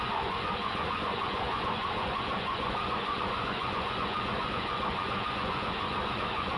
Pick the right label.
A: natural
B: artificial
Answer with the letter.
B